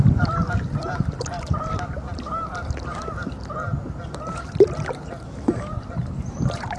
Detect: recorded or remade remade